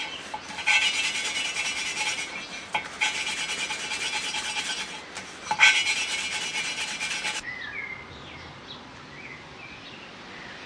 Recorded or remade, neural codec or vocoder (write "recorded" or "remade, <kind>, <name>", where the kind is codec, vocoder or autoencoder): recorded